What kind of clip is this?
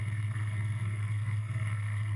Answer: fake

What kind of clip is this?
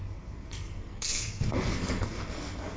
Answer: fake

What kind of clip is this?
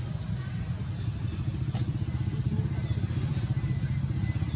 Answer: real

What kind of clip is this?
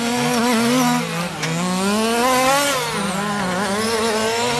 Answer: real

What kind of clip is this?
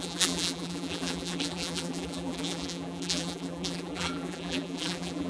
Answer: fake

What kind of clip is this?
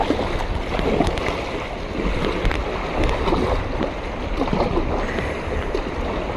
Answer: real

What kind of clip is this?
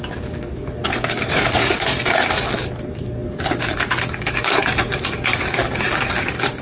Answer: fake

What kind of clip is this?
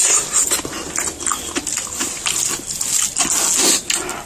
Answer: real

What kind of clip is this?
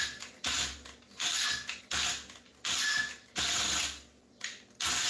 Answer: real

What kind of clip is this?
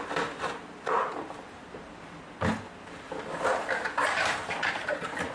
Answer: real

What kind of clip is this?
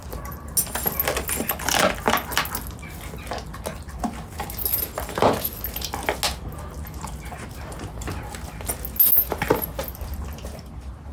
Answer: real